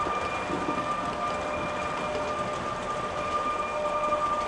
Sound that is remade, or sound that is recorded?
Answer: recorded